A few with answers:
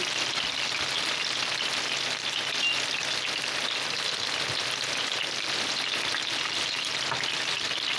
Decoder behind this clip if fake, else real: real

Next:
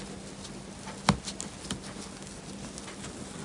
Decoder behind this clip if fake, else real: real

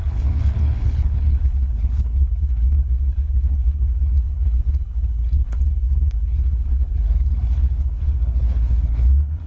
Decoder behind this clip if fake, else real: fake, codec, HILCodec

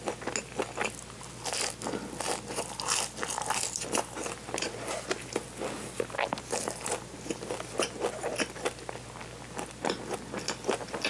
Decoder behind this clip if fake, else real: real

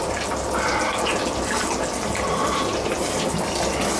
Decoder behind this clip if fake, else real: real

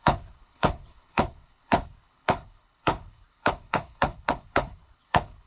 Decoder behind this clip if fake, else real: fake, codec, HILCodec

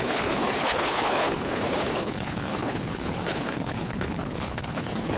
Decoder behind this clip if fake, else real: fake, codec, HILCodec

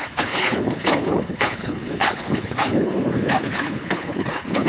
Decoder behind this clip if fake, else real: fake, codec, HILCodec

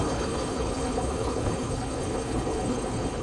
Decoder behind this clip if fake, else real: fake, codec, HILCodec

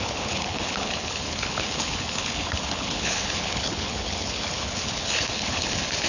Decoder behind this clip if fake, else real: fake, codec, HILCodec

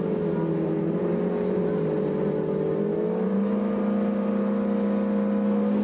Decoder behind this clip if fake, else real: real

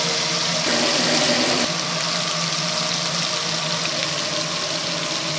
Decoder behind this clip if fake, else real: real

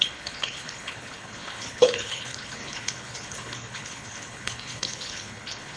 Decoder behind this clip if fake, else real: fake, codec, HILCodec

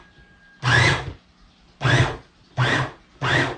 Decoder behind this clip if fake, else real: real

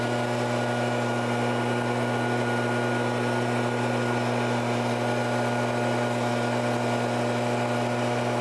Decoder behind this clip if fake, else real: real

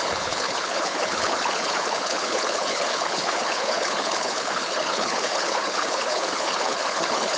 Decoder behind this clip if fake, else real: fake, codec, HILCodec